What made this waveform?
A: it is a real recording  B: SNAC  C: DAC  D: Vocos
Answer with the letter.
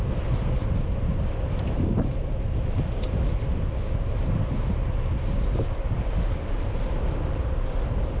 A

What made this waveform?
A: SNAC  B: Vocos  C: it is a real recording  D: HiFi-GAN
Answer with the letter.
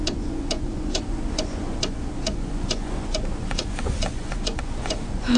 B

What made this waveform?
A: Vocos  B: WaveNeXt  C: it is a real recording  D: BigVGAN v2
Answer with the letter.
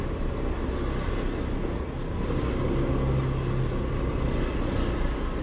C